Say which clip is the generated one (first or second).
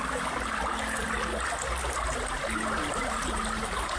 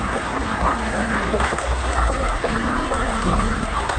second